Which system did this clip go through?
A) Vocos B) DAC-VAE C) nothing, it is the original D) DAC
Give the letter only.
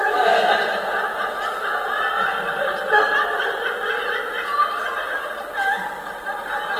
C